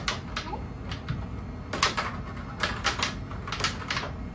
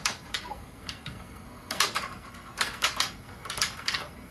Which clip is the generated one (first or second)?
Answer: second